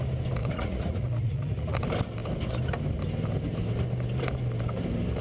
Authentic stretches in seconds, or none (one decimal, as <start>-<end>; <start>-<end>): 0.0-0.4; 1.8-5.2